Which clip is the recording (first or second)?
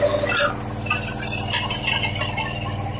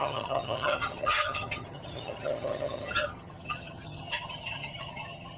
first